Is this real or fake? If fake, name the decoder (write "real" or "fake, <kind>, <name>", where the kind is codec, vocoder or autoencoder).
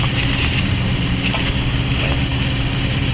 real